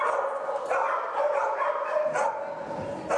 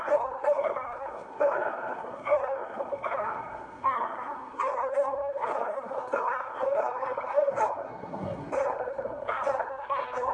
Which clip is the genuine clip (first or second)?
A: first